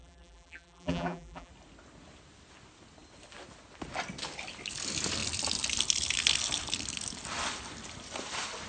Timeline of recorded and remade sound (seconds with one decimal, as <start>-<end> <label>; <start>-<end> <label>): 0.0-1.5 remade; 1.5-8.7 recorded